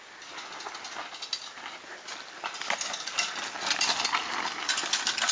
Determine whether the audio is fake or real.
real